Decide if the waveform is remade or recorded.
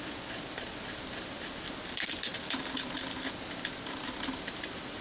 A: recorded